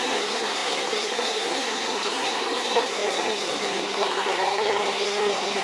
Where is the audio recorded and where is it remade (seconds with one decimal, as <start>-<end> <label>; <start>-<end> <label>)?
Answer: 0.0-5.6 remade